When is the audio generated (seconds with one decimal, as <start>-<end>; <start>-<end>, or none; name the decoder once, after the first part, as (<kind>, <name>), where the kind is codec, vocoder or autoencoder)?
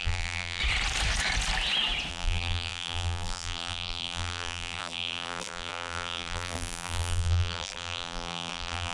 0.0-0.6 (vocoder, BigVGAN v2); 2.1-8.9